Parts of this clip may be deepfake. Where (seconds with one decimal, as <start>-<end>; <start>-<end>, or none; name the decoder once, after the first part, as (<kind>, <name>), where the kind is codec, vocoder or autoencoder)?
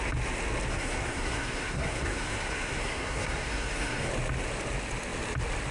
0.7-4.1 (codec, SNAC)